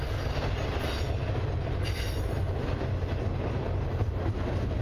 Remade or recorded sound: recorded